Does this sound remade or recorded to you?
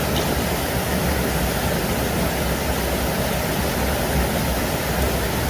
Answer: recorded